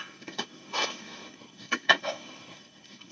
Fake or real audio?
fake